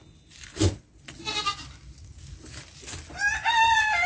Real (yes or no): yes